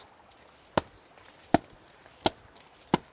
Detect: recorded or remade recorded